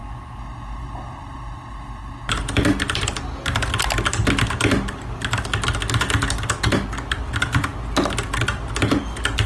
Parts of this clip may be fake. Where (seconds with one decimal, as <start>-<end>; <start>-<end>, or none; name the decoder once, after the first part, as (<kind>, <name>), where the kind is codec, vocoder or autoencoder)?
0.8-2.0 (vocoder, BigVGAN v2); 7.1-7.7; 8.9-9.5